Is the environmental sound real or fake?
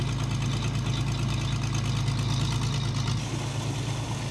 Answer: real